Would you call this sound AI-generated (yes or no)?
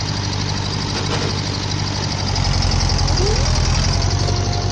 no